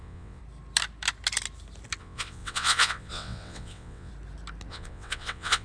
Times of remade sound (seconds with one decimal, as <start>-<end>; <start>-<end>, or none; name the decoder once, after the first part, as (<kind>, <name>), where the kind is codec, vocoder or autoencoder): 0.0-0.4 (vocoder, WaveNeXt); 2.0-4.1; 4.7-5.6